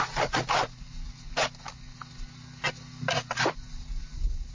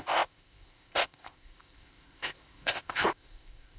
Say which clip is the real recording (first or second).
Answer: first